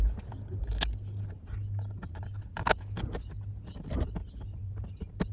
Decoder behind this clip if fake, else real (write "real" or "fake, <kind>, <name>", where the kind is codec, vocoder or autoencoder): real